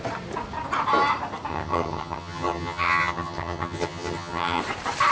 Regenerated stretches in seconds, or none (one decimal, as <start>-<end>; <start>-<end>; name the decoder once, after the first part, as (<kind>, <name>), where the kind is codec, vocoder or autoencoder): 1.5-4.6 (vocoder, HiFi-GAN)